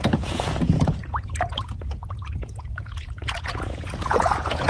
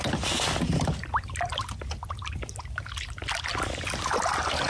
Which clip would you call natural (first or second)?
second